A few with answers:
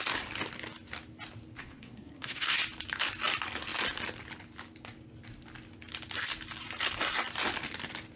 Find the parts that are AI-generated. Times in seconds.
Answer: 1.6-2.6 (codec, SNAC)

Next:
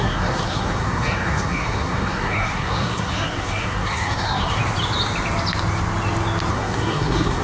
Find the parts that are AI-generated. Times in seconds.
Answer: 0.0-4.6 (codec, SNAC); 6.5-7.4

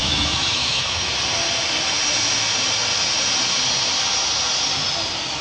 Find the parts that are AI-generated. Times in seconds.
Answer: 0.0-1.1 (autoencoder, DAC-VAE)

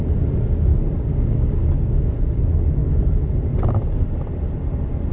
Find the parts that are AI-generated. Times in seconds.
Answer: 0.7-2.4 (codec, DAC)